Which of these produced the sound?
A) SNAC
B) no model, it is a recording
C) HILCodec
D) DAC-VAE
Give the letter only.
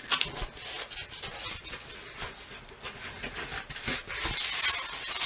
B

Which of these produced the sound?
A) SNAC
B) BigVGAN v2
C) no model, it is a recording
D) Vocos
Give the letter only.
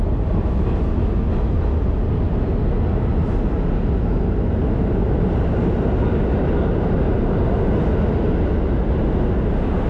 C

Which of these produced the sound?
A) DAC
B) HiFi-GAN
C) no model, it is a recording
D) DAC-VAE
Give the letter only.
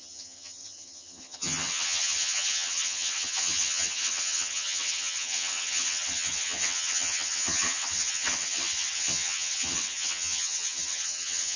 B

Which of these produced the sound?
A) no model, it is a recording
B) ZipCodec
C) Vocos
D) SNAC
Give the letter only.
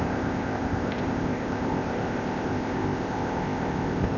B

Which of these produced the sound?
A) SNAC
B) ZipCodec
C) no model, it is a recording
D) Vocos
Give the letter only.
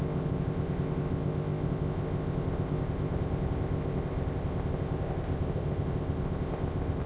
B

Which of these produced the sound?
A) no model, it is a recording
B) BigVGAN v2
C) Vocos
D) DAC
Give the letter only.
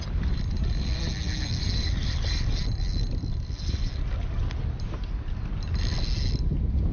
A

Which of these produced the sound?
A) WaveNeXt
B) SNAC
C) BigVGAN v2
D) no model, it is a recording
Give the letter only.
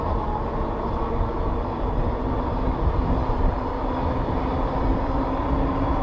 D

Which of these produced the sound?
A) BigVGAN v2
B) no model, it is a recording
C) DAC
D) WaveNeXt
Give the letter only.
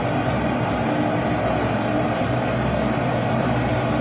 B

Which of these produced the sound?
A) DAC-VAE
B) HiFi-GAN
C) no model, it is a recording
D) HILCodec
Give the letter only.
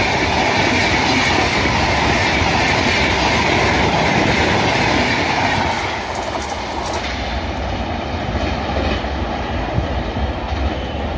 C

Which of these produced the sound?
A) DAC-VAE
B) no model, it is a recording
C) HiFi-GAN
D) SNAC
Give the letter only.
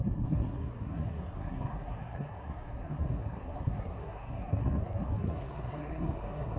D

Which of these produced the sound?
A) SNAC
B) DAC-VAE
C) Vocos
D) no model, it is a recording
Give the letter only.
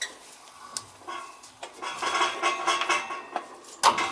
D